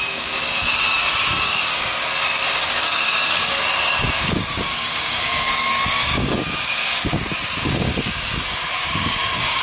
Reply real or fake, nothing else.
fake